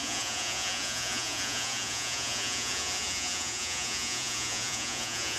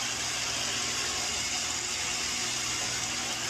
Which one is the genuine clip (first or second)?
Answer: second